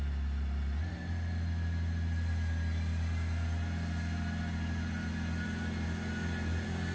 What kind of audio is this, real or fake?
real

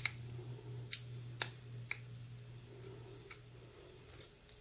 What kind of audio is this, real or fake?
real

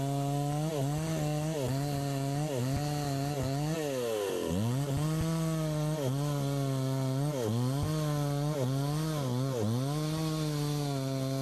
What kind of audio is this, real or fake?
real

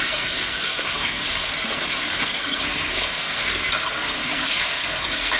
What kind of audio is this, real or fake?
fake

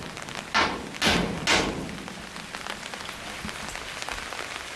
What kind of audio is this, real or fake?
real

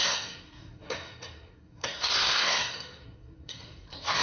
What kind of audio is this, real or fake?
fake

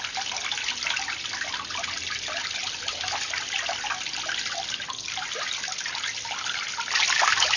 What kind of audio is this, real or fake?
real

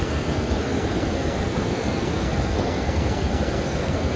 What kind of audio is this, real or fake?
fake